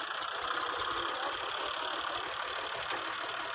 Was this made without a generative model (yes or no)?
yes